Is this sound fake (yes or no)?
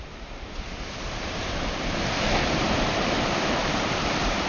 yes